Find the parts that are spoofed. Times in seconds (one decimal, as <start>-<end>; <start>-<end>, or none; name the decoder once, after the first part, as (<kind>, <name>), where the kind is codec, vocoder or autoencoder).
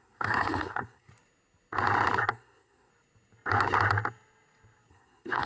0.0-1.1 (codec, SNAC); 2.3-2.9; 4.9-5.5